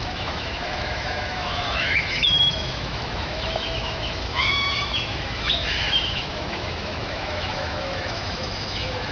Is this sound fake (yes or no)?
yes